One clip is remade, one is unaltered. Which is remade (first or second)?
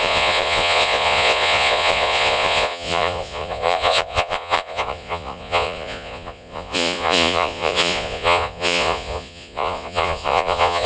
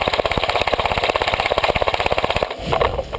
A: first